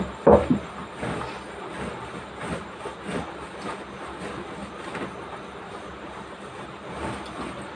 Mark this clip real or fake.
real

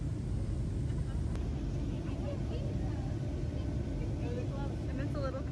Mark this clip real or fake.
real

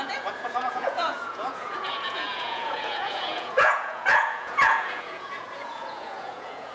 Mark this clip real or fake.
fake